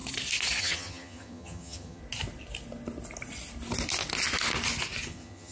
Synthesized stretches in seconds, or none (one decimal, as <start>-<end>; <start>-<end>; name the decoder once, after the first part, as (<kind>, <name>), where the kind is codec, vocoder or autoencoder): 0.6-2.0 (vocoder, HiFi-GAN); 5.1-5.5